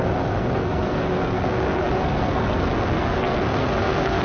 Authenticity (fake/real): fake